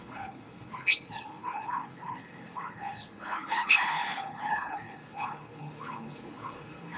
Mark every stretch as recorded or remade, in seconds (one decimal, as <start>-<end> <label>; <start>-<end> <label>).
0.0-7.0 remade